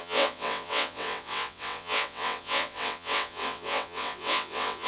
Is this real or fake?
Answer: fake